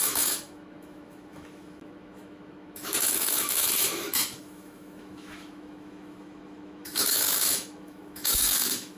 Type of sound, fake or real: fake